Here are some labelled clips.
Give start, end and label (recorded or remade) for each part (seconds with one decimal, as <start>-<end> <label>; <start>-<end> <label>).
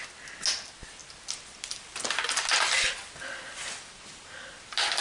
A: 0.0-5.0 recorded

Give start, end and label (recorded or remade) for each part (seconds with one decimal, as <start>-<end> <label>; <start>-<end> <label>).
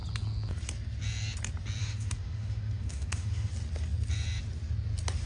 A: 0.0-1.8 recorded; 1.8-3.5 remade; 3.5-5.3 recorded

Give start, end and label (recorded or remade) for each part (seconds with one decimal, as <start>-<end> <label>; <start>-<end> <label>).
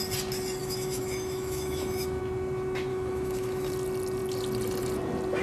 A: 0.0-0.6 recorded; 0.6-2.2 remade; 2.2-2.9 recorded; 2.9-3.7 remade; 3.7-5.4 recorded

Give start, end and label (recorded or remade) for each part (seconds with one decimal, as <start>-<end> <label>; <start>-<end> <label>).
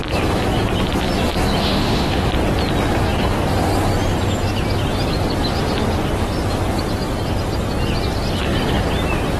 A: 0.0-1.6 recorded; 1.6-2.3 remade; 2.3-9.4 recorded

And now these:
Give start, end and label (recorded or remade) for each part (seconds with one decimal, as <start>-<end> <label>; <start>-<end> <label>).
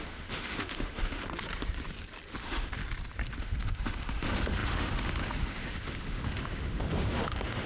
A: 0.0-1.2 remade; 1.2-2.4 recorded; 2.4-2.8 remade; 2.8-3.4 recorded; 3.4-7.7 remade